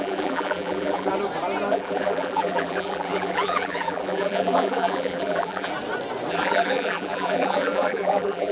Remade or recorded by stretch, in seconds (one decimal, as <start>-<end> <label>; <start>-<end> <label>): 0.0-1.1 remade; 1.1-1.7 recorded; 1.7-5.7 remade; 5.7-6.3 recorded; 6.3-8.5 remade